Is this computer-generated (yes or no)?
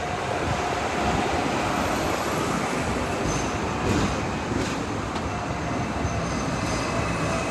no